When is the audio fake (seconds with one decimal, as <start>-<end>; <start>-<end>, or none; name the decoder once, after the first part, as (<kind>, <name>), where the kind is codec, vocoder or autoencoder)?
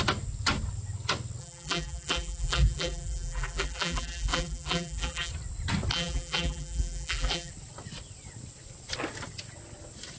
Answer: 1.4-5.3 (vocoder, BigVGAN v2); 5.9-7.5